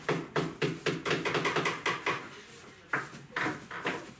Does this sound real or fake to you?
real